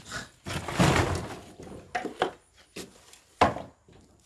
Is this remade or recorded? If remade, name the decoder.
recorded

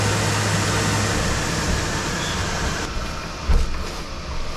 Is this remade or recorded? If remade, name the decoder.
recorded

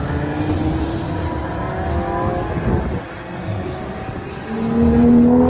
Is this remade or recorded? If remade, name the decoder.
recorded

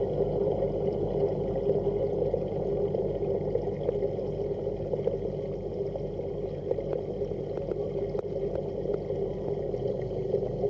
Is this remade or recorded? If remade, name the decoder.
recorded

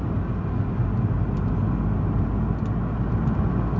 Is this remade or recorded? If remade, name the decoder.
recorded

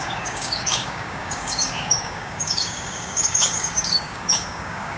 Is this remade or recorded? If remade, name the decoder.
remade, codec, DAC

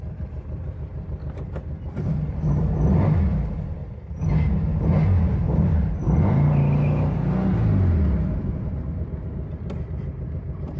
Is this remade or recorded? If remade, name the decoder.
recorded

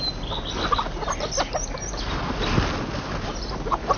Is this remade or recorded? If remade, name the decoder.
recorded